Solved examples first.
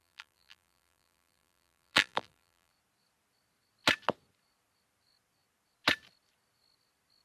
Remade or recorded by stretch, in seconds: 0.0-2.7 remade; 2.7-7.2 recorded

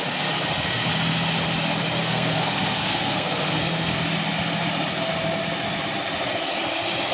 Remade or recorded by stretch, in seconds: 0.0-2.0 recorded; 2.0-4.0 remade; 4.0-7.1 recorded

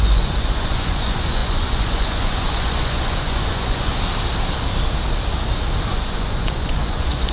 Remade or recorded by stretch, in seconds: 0.0-3.9 remade; 3.9-5.9 recorded; 5.9-7.3 remade

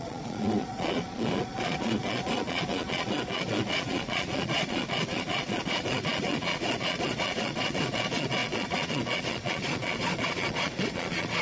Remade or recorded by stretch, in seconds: 0.0-11.4 remade

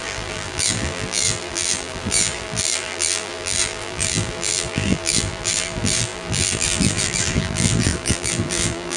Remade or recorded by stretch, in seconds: 0.0-9.0 remade

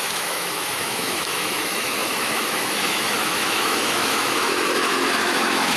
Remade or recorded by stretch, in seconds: 0.0-5.8 remade

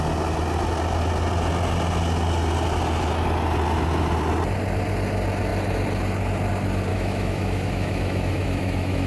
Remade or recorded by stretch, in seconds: 0.0-6.9 recorded; 6.9-9.1 remade